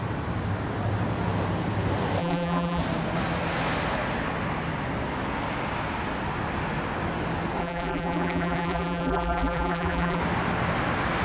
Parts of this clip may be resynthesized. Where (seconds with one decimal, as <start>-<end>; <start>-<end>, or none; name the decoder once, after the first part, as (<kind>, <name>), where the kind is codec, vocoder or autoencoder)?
2.2-2.8 (vocoder, BigVGAN v2); 7.6-10.2